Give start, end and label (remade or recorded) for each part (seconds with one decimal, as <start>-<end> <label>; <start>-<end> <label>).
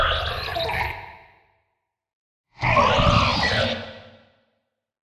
0.0-5.2 recorded